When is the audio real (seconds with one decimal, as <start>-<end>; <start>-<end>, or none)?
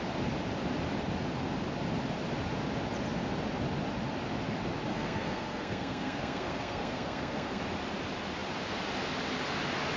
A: 0.0-4.9; 7.6-10.0